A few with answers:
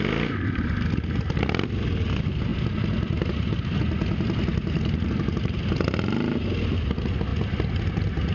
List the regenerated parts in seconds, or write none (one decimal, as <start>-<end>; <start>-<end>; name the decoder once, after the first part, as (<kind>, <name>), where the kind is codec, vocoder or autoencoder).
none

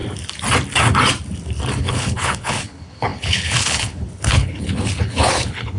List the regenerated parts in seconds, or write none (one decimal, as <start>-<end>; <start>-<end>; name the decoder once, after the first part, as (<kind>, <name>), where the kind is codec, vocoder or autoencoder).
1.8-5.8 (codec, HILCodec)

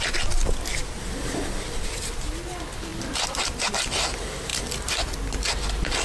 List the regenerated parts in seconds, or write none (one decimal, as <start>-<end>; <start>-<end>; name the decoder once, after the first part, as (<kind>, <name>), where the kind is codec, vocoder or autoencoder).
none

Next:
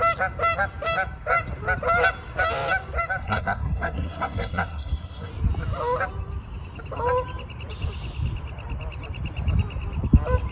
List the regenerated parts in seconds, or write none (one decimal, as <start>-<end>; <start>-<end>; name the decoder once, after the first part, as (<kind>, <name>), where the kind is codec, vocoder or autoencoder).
3.2-5.3 (codec, SNAC)

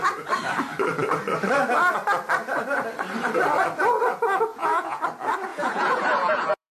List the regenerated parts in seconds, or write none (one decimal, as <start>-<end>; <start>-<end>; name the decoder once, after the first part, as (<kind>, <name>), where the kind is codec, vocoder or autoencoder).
4.5-5.0 (vocoder, Vocos); 5.5-6.7

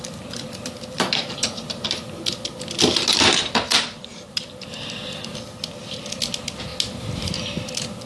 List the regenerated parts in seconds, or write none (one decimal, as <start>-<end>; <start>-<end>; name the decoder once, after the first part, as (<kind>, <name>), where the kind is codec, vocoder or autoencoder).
3.7-4.5 (vocoder, BigVGAN v2)